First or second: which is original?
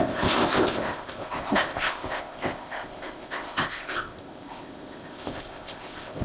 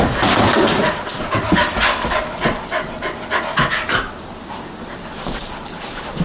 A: second